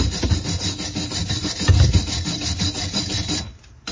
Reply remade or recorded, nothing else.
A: recorded